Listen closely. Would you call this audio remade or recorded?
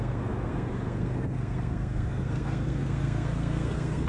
remade